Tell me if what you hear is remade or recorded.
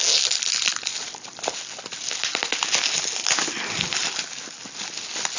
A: recorded